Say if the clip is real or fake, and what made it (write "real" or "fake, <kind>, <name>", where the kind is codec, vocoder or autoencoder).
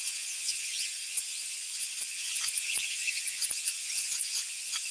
fake, vocoder, Vocos